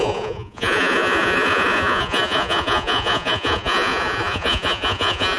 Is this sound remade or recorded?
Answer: remade